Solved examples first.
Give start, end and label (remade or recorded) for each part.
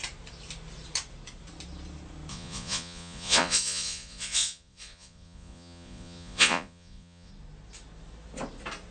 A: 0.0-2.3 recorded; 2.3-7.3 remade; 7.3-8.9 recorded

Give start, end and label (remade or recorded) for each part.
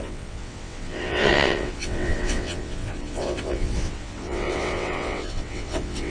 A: 0.0-6.1 remade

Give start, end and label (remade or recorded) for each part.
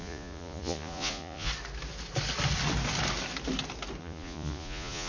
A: 0.0-1.5 remade; 1.5-4.0 recorded; 4.0-5.1 remade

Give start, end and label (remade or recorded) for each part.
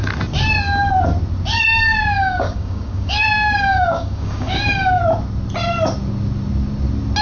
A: 0.0-1.9 recorded; 1.9-5.0 remade; 5.0-7.2 recorded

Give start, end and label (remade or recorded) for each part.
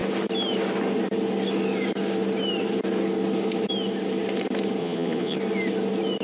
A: 0.0-4.8 recorded; 4.8-5.4 remade; 5.4-6.2 recorded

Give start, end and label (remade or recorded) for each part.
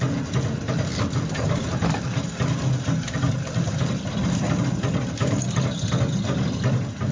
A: 0.0-7.1 recorded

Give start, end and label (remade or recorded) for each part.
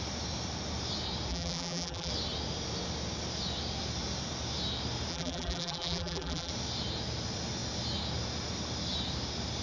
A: 0.0-1.3 recorded; 1.3-2.1 remade; 2.1-5.1 recorded; 5.1-6.5 remade; 6.5-9.6 recorded